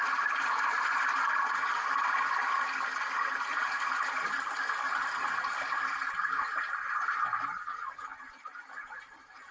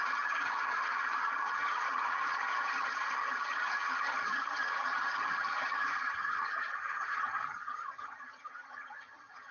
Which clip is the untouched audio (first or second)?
first